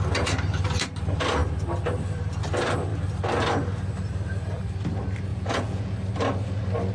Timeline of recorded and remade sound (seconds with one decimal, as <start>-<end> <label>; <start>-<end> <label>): 0.0-5.3 recorded; 5.3-5.9 remade; 5.9-6.9 recorded